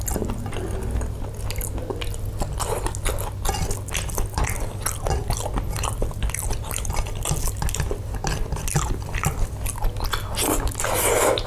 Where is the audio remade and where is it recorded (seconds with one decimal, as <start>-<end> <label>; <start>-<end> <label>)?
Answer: 0.0-11.5 recorded